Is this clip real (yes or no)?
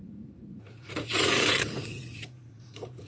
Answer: no